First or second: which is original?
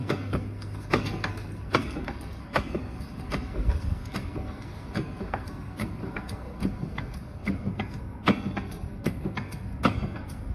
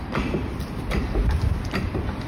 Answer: second